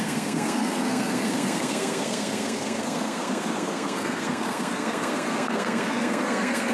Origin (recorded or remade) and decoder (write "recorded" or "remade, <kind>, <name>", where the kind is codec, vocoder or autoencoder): remade, codec, SNAC